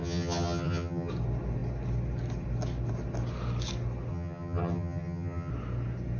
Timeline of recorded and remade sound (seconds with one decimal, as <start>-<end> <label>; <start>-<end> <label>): 0.0-1.1 remade; 1.1-4.1 recorded; 4.1-5.5 remade; 5.5-6.2 recorded